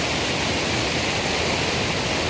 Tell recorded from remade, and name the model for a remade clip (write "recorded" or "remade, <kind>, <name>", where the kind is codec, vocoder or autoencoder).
recorded